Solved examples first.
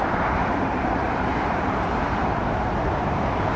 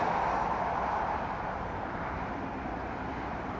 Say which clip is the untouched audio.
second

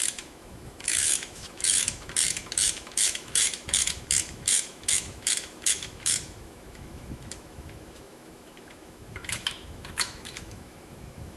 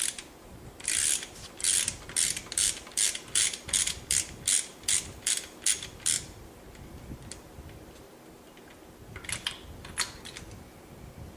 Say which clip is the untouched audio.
second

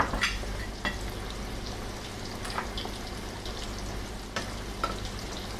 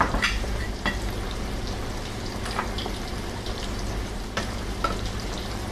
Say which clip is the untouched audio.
first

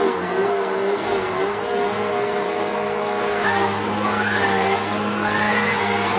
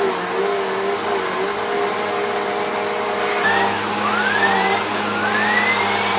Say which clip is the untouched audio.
second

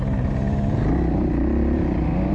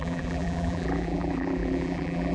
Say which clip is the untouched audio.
first